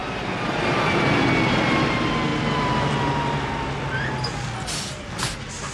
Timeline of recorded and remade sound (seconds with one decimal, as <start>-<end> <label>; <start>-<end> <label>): 0.0-5.7 recorded